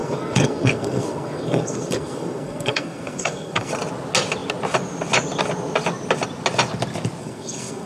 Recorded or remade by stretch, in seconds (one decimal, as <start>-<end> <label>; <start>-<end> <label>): 0.0-3.7 remade; 3.7-7.2 recorded; 7.2-7.9 remade